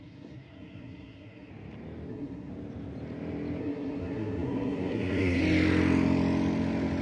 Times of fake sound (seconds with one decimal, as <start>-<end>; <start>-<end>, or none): 0.0-1.5; 2.1-2.5; 3.6-5.4